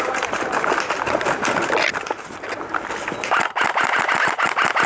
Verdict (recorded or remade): recorded